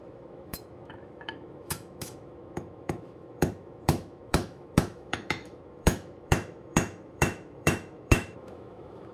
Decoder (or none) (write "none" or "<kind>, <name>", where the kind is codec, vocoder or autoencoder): autoencoder, DAC-VAE